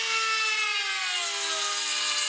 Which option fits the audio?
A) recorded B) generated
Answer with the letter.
A